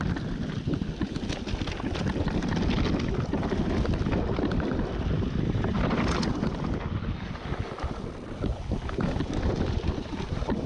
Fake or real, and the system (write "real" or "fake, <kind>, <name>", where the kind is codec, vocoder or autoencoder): real